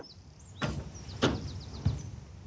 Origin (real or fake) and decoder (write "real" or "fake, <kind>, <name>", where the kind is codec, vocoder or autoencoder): real